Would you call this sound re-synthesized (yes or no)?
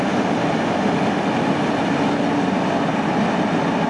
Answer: no